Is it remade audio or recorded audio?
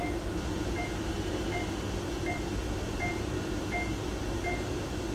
recorded